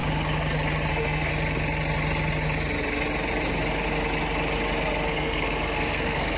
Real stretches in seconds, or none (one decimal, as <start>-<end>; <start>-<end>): 0.0-0.9; 1.3-5.1